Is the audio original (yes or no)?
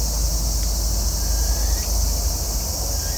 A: yes